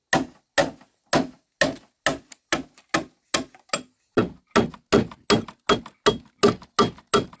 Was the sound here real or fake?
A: real